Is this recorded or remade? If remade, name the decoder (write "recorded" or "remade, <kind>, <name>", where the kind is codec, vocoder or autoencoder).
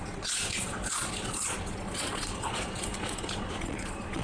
remade, vocoder, Vocos